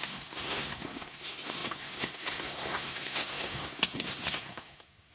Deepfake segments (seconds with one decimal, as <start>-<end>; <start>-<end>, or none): 0.0-5.1